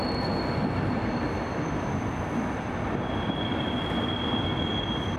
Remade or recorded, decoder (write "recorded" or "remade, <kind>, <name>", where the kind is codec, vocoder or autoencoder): recorded